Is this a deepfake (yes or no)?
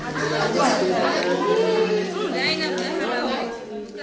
no